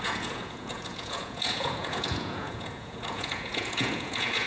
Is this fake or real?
fake